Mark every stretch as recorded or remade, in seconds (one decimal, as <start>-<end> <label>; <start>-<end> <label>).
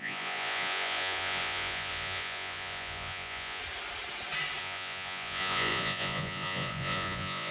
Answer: 0.0-3.6 remade; 3.6-4.6 recorded; 4.6-7.5 remade